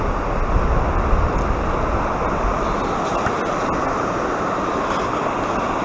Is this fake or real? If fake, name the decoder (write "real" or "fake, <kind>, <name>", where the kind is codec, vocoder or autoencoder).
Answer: real